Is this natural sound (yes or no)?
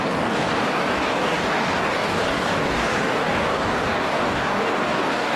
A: no